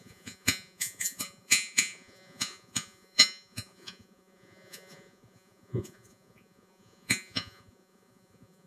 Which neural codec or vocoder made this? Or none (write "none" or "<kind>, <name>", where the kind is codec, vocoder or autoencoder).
vocoder, Vocos